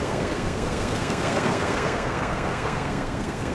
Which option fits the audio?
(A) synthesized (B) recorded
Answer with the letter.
A